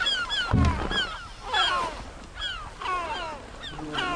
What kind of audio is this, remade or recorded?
recorded